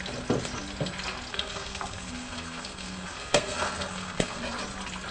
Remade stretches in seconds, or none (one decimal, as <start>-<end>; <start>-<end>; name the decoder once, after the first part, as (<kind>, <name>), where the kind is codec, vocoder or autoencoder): 1.3-4.4 (codec, SNAC)